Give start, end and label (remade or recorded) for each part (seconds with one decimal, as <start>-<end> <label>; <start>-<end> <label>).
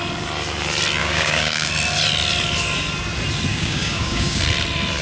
0.0-1.0 recorded; 1.0-1.7 remade; 1.7-3.5 recorded; 3.5-4.4 remade; 4.4-5.0 recorded